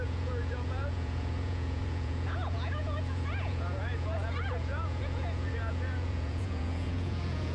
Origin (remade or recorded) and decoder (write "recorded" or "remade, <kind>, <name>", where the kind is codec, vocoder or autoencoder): remade, vocoder, Vocos